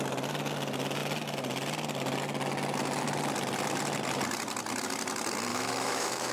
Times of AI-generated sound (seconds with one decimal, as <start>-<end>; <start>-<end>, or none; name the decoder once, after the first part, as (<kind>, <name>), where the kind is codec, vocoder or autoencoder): 5.5-6.3 (autoencoder, DAC-VAE)